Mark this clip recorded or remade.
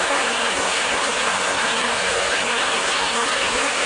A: remade